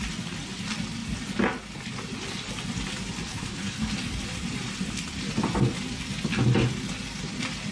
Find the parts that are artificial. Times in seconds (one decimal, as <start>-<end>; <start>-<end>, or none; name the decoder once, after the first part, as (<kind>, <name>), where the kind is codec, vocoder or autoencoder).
3.3-3.9 (codec, HILCodec)